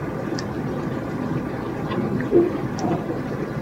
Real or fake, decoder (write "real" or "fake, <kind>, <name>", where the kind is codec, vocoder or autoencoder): real